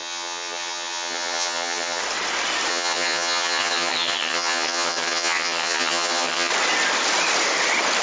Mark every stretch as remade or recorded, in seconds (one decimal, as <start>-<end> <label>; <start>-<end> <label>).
0.0-2.0 remade; 2.0-2.7 recorded; 2.7-6.5 remade; 6.5-8.0 recorded